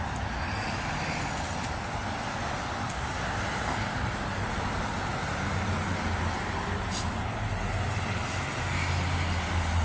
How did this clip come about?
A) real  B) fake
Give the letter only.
A